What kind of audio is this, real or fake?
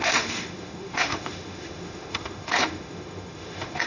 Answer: fake